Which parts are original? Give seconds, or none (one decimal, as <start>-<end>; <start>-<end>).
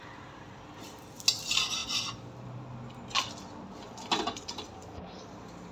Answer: 0.0-5.7